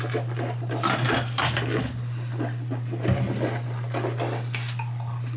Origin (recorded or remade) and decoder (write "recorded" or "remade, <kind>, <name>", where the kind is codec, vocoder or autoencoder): recorded